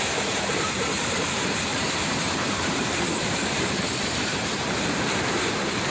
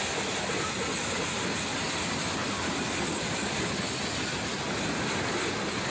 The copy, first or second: first